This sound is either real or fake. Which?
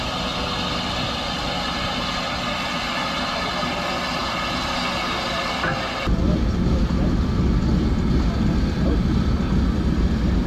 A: real